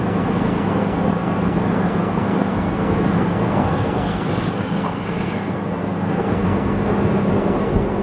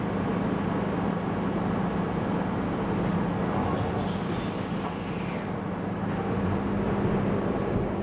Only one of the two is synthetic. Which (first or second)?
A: first